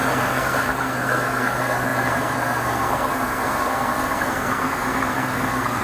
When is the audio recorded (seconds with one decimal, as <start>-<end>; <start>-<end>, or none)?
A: none